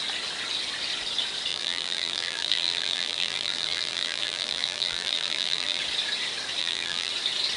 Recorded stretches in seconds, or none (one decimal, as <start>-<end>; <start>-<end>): 0.0-1.5; 5.8-6.6; 7.1-7.6